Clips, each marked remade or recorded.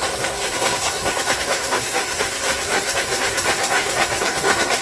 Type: remade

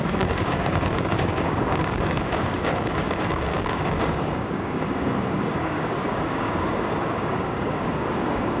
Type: remade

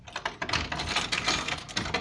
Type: recorded